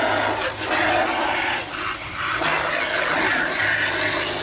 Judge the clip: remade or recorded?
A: recorded